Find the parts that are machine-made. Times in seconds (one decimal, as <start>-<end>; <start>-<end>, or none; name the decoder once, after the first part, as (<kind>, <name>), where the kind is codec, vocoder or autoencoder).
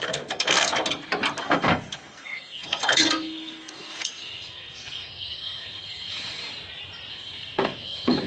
0.0-0.7 (codec, SNAC); 1.4-6.4; 7.1-8.3